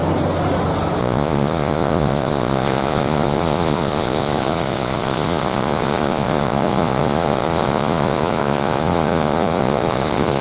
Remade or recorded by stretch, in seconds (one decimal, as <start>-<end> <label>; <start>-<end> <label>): 0.0-1.0 recorded; 1.0-10.4 remade